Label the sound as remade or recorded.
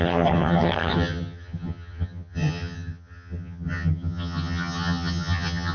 remade